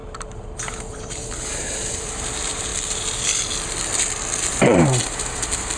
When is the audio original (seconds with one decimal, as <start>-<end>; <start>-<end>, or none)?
0.0-0.7; 2.7-4.4